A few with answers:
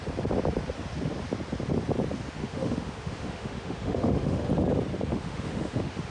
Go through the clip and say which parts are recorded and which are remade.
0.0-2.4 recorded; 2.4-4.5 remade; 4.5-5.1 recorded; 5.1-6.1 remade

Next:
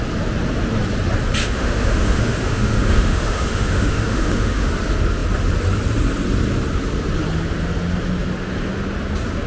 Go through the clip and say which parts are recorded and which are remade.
0.0-1.4 recorded; 1.4-4.7 remade; 4.7-9.5 recorded

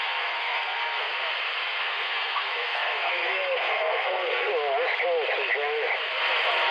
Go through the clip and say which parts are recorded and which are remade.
0.0-1.1 remade; 1.1-1.6 recorded; 1.6-4.5 remade; 4.5-6.7 recorded

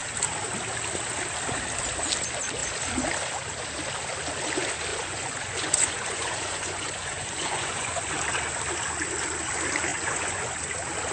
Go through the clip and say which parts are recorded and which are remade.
0.0-4.9 recorded; 4.9-8.1 remade; 8.1-9.9 recorded; 9.9-10.5 remade; 10.5-11.1 recorded